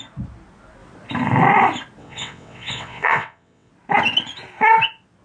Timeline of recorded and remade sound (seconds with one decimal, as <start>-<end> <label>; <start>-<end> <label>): 0.0-2.0 recorded; 2.0-3.7 remade; 3.7-5.2 recorded